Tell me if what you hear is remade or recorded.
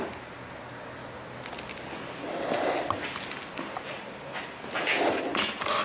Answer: recorded